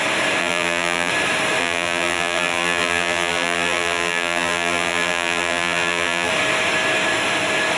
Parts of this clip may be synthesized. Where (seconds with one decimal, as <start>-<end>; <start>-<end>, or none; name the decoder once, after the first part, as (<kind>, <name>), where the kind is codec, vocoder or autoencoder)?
0.4-1.1 (vocoder, BigVGAN v2); 1.6-6.3